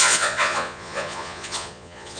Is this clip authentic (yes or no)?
no